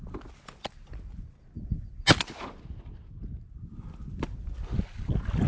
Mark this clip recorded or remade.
recorded